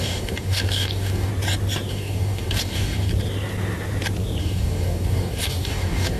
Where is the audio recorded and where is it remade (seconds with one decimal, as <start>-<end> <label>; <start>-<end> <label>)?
0.0-1.3 remade; 1.3-1.9 recorded; 1.9-3.1 remade; 3.1-4.4 recorded; 4.4-6.2 remade